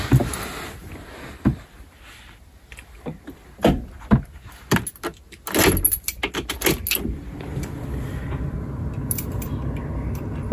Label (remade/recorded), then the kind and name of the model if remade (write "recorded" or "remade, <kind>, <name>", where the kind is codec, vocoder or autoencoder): recorded